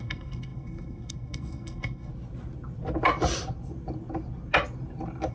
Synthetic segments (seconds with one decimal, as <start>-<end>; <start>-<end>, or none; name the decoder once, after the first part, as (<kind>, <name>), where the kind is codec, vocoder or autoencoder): 0.0-2.1 (codec, SNAC)